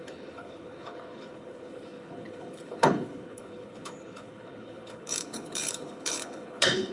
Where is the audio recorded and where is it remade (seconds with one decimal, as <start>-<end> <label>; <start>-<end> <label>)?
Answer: 0.0-6.9 remade